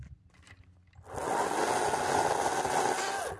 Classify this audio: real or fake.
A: real